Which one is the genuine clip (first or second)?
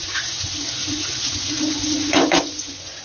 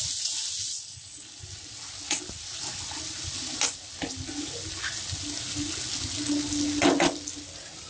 second